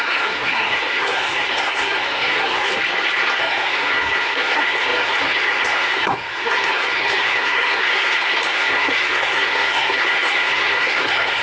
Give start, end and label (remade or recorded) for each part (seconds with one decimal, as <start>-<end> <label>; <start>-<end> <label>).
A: 0.0-2.7 remade; 2.7-3.4 recorded; 3.4-11.4 remade